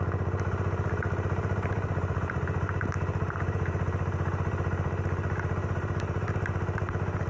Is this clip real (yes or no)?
no